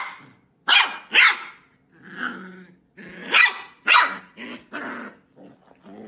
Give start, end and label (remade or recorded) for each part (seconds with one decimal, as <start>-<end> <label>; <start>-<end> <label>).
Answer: 0.0-6.1 recorded